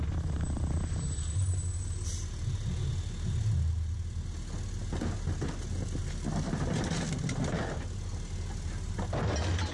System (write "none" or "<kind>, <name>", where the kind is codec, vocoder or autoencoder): none